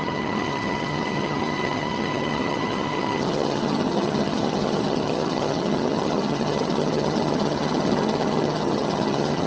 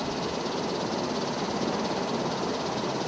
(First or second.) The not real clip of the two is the first